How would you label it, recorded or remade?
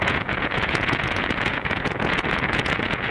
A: remade